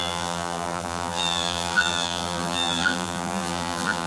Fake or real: fake